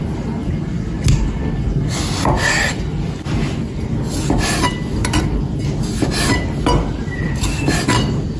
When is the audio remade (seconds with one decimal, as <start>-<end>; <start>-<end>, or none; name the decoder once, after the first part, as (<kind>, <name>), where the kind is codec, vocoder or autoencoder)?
none